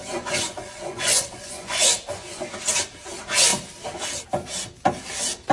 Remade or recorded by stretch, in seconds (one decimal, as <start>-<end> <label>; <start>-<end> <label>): 0.0-2.6 remade; 2.6-5.5 recorded